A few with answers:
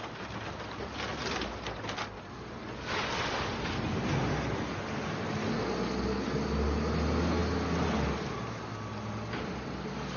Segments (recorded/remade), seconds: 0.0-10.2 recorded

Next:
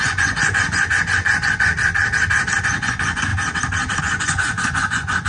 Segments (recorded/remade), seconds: 0.0-1.7 remade; 1.7-2.6 recorded; 2.6-3.3 remade; 3.3-4.0 recorded; 4.0-5.3 remade